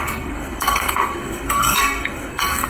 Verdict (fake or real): fake